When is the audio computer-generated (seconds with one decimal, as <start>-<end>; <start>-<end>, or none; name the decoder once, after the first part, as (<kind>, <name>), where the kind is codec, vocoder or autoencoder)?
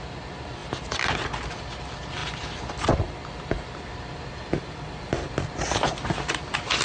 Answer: none